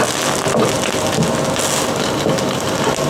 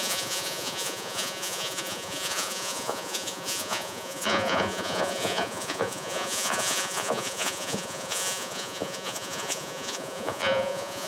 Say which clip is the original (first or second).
first